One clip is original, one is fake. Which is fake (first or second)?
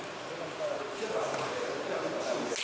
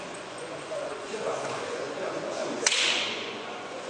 second